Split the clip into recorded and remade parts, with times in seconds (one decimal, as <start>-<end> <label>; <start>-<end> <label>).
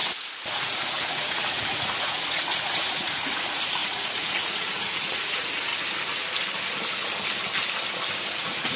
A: 0.0-5.7 remade; 5.7-8.3 recorded; 8.3-8.8 remade